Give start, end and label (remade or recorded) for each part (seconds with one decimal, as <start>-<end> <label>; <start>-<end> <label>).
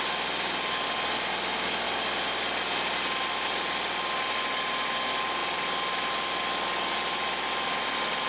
0.0-8.3 recorded